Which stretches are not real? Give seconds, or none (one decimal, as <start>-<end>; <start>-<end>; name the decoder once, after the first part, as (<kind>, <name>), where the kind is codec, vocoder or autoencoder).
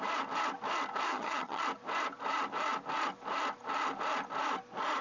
1.1-1.6 (vocoder, HiFi-GAN)